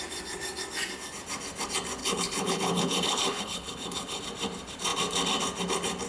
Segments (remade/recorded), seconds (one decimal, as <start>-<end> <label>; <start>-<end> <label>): 0.0-2.0 recorded; 2.0-4.2 remade; 4.2-6.1 recorded